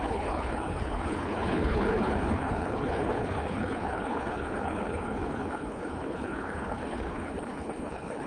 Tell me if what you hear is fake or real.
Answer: fake